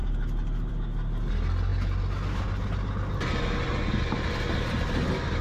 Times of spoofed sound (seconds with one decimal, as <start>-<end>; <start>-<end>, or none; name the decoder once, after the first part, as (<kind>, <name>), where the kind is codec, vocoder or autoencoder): none

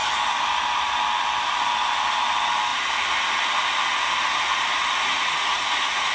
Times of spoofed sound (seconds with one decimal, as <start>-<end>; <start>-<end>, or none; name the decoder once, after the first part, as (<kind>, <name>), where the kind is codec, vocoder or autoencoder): 5.1-6.1 (vocoder, Vocos)

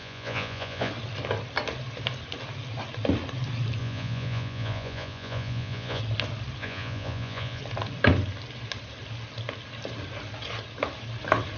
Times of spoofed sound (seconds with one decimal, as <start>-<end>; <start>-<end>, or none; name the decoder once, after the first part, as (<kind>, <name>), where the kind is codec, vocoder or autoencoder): 0.0-0.9 (vocoder, Vocos); 3.8-6.0; 6.6-7.6

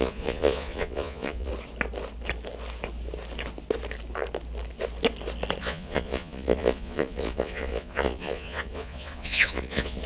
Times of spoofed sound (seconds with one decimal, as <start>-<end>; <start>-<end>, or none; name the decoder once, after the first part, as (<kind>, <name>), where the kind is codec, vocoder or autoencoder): 0.0-1.5 (vocoder, Vocos); 5.6-10.1

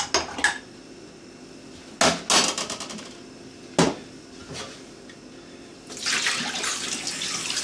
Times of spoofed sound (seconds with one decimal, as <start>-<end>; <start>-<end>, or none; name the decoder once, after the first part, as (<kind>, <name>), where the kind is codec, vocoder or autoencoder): none

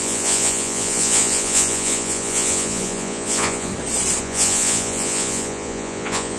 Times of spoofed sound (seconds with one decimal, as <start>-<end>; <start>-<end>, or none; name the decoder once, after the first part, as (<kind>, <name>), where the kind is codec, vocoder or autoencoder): 0.0-3.7 (vocoder, Vocos); 4.2-6.4